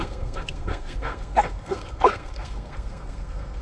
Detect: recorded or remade remade